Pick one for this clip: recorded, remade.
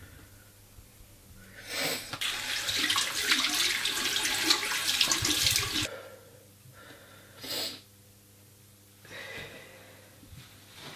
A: recorded